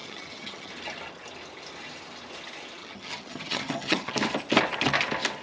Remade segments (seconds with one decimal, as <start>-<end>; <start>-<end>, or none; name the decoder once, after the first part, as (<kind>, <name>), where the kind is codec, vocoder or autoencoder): 0.0-0.7 (vocoder, HiFi-GAN); 2.8-4.1